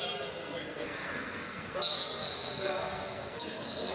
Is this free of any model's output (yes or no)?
no